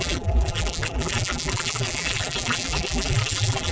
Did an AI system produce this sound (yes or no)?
yes